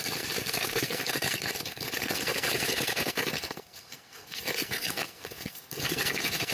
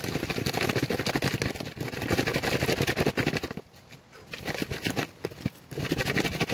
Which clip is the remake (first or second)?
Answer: first